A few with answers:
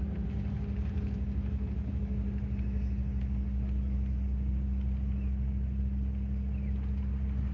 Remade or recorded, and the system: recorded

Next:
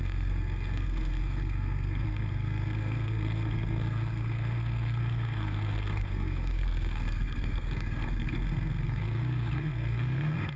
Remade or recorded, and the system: remade, codec, SNAC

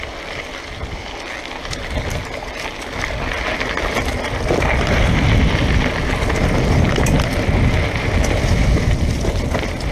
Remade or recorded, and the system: recorded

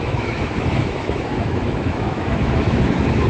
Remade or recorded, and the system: remade, autoencoder, DAC-VAE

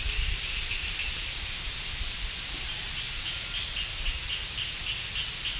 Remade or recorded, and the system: recorded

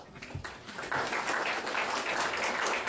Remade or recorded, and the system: recorded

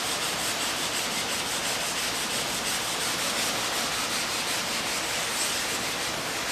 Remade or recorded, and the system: recorded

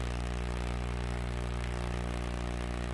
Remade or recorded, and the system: recorded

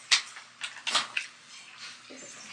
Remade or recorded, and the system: recorded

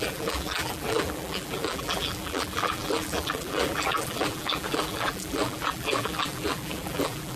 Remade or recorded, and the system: remade, vocoder, BigVGAN v2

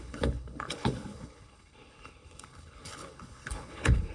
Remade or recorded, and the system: remade, codec, HILCodec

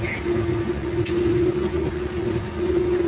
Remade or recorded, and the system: remade, vocoder, Vocos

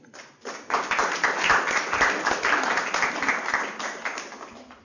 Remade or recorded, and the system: recorded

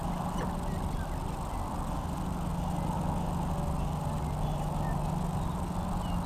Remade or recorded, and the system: recorded